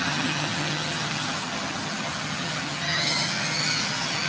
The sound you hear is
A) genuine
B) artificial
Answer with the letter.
B